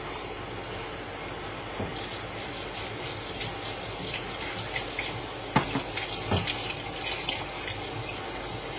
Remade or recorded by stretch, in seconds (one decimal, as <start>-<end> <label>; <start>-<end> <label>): 0.0-8.8 recorded

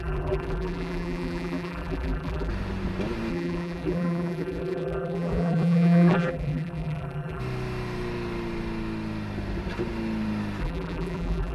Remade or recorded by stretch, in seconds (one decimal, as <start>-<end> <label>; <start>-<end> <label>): 0.0-2.5 remade; 2.5-3.3 recorded; 3.3-7.4 remade; 7.4-10.6 recorded; 10.6-11.5 remade

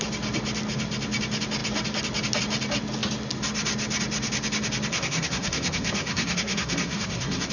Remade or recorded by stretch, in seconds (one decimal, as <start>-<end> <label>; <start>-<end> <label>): 0.0-4.9 recorded; 4.9-7.5 remade